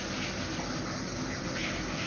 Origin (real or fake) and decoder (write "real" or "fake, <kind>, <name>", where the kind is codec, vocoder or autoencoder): real